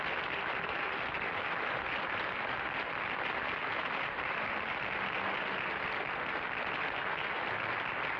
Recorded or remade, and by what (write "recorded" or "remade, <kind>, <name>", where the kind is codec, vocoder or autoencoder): recorded